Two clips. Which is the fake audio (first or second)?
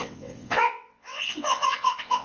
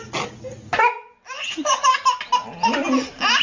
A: first